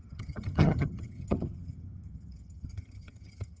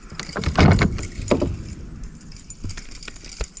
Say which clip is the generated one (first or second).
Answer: first